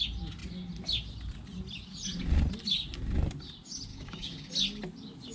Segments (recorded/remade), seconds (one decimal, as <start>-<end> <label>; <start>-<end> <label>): 0.0-3.9 recorded; 3.9-4.5 remade; 4.5-5.3 recorded